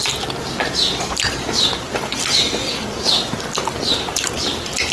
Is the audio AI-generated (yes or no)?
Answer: yes